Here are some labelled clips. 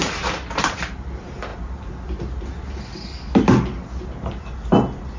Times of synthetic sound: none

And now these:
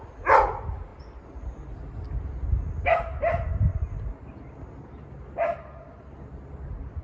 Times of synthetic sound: none

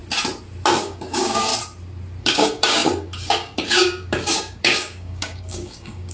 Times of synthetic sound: 0.8-1.5 (codec, DAC); 2.2-6.1

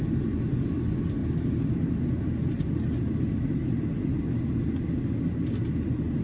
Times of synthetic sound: none

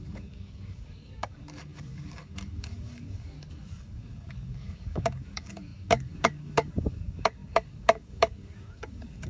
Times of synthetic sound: 0.0-9.3 (codec, DAC)

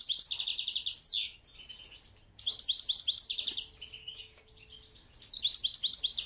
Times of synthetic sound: 4.0-4.5 (codec, DAC)

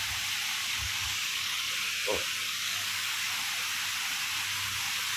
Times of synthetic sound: 0.6-1.7 (codec, DAC); 2.4-3.2